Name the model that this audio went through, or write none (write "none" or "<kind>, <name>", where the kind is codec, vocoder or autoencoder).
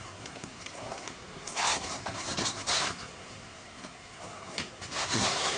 codec, SNAC